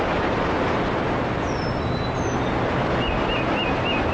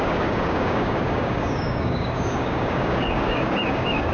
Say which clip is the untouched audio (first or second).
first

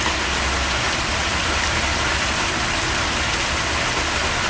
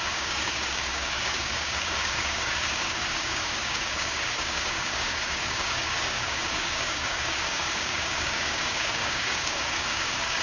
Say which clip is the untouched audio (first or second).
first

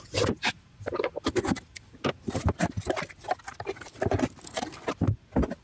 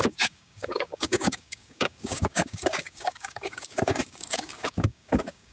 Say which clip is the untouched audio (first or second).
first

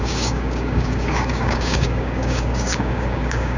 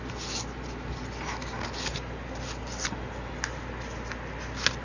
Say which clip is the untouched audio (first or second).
second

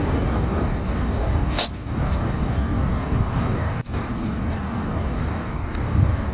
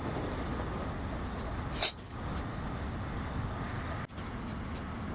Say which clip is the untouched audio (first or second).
second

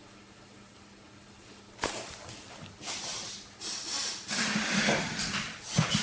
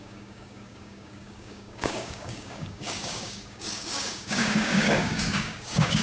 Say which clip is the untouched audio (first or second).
first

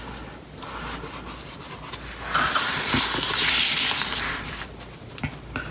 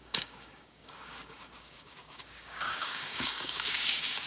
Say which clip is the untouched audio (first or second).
first